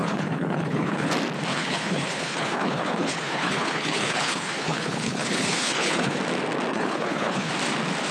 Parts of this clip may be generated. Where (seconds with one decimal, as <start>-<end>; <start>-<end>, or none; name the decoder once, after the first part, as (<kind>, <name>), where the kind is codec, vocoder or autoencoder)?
0.0-1.1 (codec, HILCodec); 1.5-6.2; 6.7-7.5